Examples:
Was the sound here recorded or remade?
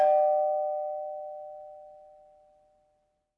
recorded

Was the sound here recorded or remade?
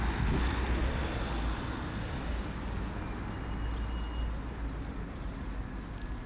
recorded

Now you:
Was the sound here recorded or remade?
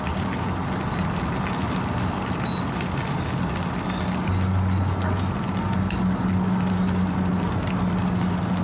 recorded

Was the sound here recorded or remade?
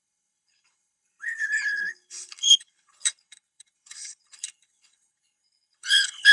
remade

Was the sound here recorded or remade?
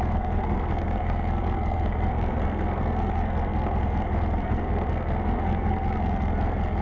remade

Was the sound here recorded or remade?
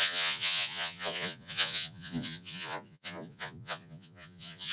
remade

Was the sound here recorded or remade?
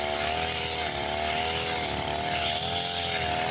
recorded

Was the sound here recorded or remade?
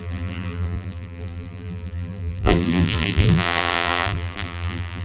remade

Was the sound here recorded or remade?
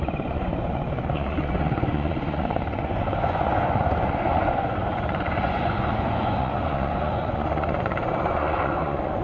remade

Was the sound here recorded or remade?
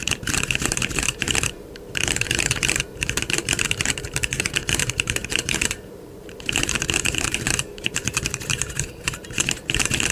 remade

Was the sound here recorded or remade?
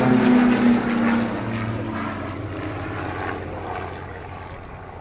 recorded